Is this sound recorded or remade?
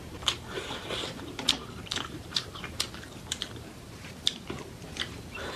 remade